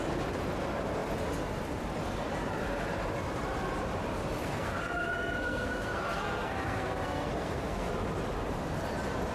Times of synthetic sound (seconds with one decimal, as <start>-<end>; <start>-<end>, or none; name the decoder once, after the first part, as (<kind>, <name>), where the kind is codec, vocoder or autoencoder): 4.4-7.9 (codec, SNAC)